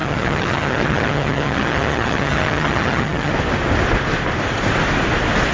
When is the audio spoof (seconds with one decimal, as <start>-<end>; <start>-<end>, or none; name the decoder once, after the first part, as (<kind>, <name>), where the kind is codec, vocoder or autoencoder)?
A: 0.0-3.3 (vocoder, HiFi-GAN)